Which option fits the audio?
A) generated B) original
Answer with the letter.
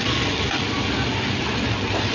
B